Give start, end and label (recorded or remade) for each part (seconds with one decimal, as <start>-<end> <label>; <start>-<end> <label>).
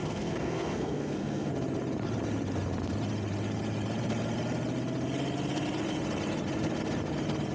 0.0-1.5 remade; 1.5-7.5 recorded